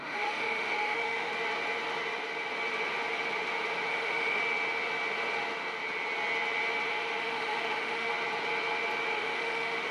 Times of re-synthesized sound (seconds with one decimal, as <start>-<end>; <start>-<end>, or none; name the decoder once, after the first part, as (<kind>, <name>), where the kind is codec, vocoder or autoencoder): 0.0-1.3 (autoencoder, DAC-VAE); 3.9-4.4; 7.2-8.1; 9.1-9.9